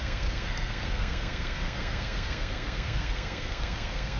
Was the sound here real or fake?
fake